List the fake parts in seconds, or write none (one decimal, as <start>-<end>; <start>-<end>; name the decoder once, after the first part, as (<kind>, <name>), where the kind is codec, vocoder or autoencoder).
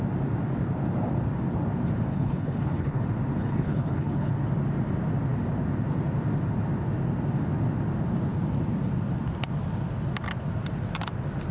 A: 2.1-3.0 (codec, HILCodec); 3.4-4.3